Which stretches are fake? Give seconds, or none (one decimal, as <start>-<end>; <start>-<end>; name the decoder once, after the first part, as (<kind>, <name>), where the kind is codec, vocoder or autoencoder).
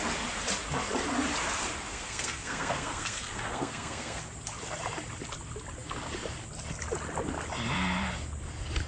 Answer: 1.9-4.2 (codec, SNAC)